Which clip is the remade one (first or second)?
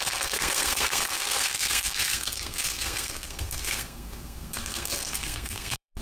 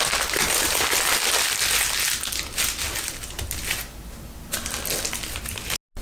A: first